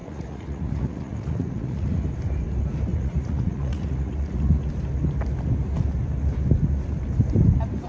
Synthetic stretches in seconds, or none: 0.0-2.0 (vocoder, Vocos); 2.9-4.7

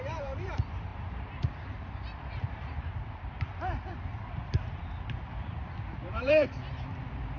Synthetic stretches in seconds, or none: 0.0-7.4 (vocoder, BigVGAN v2)

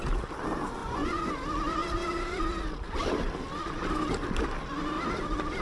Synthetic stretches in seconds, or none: 0.8-1.3 (vocoder, Vocos)

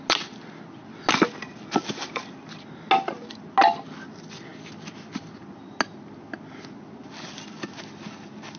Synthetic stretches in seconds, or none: none

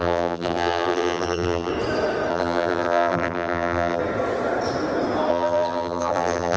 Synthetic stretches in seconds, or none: 0.0-1.7 (vocoder, BigVGAN v2); 2.3-4.0; 5.3-6.6

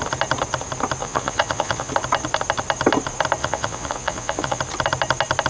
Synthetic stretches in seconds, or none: 1.0-1.9 (vocoder, Vocos); 3.4-4.6

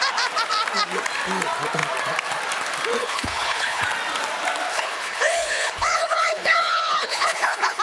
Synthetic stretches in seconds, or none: 3.0-3.8 (codec, HILCodec); 4.7-7.8